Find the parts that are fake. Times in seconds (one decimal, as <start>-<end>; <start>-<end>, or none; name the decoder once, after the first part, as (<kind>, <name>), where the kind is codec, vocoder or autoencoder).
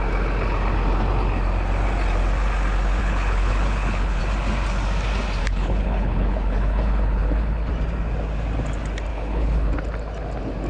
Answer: 3.0-4.2 (codec, HILCodec); 5.4-7.7; 9.1-9.7